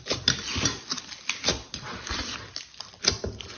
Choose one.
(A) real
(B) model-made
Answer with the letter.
A